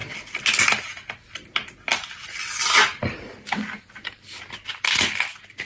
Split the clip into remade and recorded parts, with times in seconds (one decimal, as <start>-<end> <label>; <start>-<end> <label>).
0.0-5.6 recorded